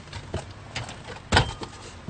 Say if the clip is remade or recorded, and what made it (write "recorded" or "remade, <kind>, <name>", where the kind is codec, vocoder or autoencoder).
recorded